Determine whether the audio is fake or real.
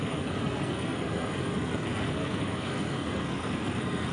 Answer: fake